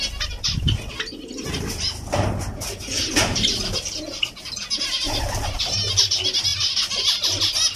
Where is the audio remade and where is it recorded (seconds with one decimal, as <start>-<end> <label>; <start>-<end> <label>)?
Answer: 0.0-7.8 recorded